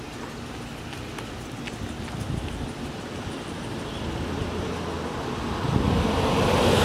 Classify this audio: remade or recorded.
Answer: recorded